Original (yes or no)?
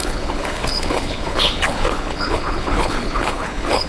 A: no